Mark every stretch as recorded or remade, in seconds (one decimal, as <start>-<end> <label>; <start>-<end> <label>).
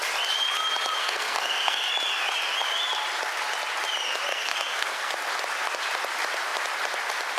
0.0-1.0 recorded; 1.0-1.9 remade; 1.9-4.3 recorded; 4.3-5.1 remade; 5.1-7.4 recorded